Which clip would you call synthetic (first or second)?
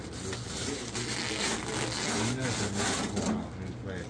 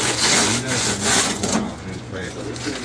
second